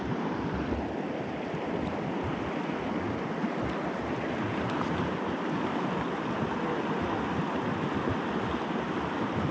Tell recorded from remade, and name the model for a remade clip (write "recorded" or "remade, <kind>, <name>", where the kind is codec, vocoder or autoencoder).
recorded